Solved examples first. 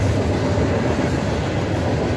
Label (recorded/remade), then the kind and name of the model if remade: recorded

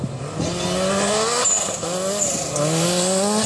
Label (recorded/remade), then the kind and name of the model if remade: recorded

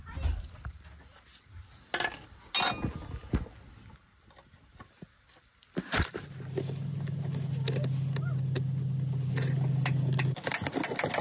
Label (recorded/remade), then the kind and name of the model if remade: recorded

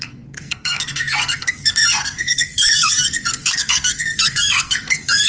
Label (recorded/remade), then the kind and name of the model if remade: remade, codec, SNAC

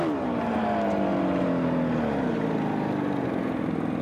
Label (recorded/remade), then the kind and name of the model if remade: recorded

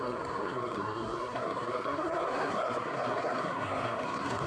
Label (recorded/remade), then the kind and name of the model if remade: remade, codec, SNAC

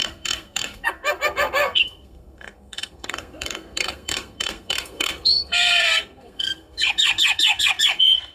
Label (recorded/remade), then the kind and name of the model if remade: remade, codec, SNAC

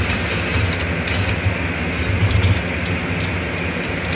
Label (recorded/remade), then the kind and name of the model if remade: recorded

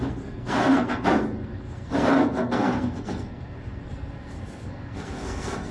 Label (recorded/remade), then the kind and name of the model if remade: remade, codec, SNAC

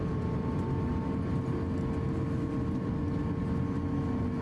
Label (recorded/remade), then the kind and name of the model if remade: recorded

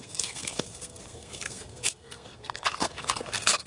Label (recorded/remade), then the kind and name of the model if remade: remade, codec, SNAC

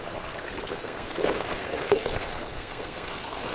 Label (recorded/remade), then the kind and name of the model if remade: remade, codec, SNAC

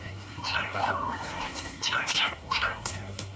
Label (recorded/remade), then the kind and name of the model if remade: remade, codec, SNAC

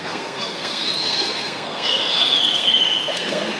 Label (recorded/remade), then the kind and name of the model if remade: remade, codec, SNAC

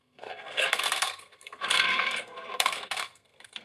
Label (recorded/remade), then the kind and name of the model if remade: remade, codec, SNAC